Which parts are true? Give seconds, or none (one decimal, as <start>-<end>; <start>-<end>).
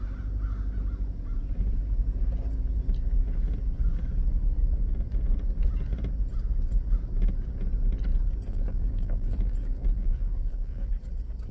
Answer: 0.0-8.5; 10.9-11.5